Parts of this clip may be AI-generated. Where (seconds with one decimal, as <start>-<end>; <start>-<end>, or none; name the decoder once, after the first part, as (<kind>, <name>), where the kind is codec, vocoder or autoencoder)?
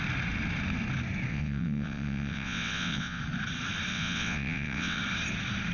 1.3-3.2 (vocoder, WaveNeXt); 3.9-5.0